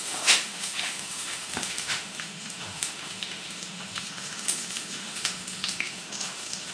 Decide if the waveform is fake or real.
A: fake